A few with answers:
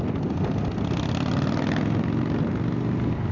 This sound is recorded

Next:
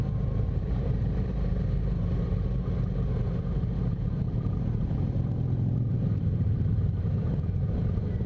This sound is remade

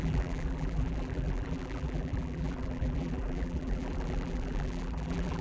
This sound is remade